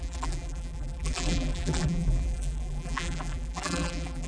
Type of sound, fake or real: fake